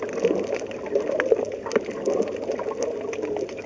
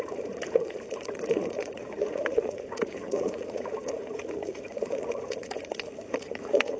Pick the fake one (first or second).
second